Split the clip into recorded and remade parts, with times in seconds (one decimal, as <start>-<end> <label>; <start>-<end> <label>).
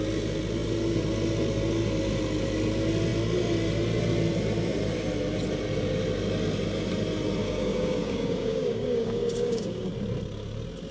0.0-7.4 recorded; 7.4-9.9 remade; 9.9-10.9 recorded